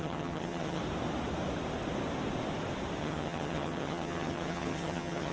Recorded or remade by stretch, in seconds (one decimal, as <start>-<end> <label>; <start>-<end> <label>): 0.0-0.8 remade; 0.8-3.0 recorded; 3.0-5.3 remade